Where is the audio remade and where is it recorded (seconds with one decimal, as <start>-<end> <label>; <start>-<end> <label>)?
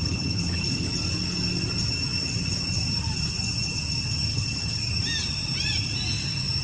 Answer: 0.0-0.9 remade; 0.9-4.3 recorded; 4.3-4.8 remade; 4.8-6.6 recorded